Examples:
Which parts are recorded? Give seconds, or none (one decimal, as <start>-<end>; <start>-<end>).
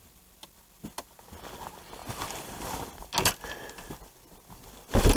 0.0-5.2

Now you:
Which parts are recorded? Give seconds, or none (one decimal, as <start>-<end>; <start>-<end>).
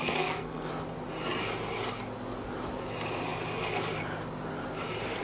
0.7-5.2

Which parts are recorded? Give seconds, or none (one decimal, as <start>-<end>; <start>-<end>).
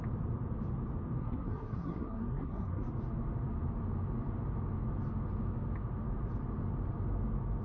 0.0-1.2; 2.9-7.6